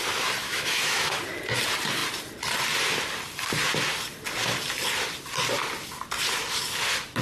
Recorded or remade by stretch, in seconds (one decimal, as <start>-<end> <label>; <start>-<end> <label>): 0.0-0.4 recorded; 0.4-1.2 remade; 1.2-7.2 recorded